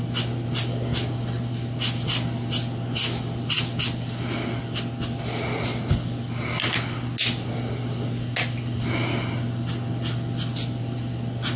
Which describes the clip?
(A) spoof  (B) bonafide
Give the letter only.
B